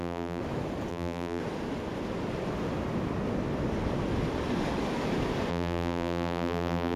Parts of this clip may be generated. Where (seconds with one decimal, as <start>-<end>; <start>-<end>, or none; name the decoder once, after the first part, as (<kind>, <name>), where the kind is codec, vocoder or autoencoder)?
0.0-0.4 (vocoder, BigVGAN v2); 0.9-1.4; 5.5-7.0